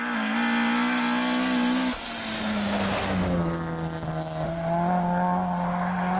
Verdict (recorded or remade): recorded